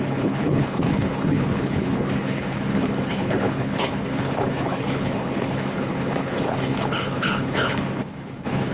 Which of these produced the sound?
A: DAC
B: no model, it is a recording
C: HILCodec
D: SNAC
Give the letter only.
C